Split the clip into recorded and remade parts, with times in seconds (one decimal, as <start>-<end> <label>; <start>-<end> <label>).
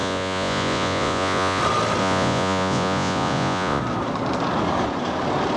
0.0-1.6 remade; 1.6-2.0 recorded; 2.0-3.8 remade; 3.8-5.6 recorded